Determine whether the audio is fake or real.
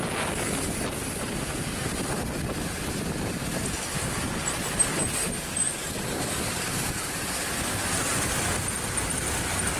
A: real